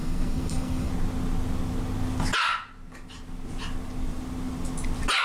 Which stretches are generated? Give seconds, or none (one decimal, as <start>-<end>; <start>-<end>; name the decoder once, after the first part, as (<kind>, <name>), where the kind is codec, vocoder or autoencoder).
0.0-0.9 (codec, SNAC)